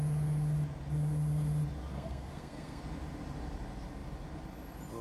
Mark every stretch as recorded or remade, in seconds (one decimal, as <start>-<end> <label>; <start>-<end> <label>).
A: 0.0-1.9 recorded; 1.9-2.8 remade; 2.8-5.0 recorded

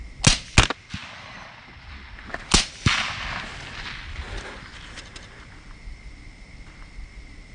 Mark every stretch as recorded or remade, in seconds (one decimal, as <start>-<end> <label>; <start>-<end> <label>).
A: 0.0-7.5 recorded

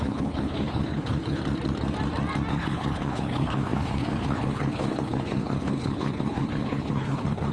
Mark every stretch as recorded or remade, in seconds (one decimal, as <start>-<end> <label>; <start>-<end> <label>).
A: 0.0-1.4 remade; 1.4-2.5 recorded; 2.5-7.5 remade

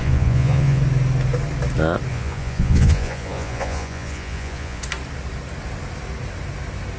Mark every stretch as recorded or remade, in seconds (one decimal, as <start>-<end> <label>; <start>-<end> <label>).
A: 0.0-0.8 remade; 0.8-2.1 recorded; 2.1-4.8 remade; 4.8-7.0 recorded

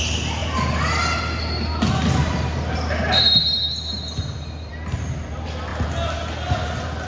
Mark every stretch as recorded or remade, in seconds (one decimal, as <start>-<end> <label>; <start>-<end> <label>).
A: 0.0-7.1 recorded

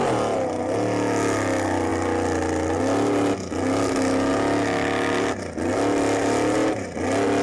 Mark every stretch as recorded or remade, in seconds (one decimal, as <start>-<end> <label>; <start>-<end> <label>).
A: 0.0-7.4 recorded

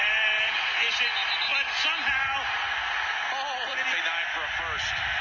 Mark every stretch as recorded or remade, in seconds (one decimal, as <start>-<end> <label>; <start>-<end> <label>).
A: 0.0-5.2 recorded

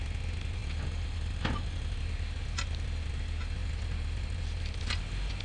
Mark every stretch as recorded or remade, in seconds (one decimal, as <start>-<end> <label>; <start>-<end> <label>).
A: 0.0-5.4 recorded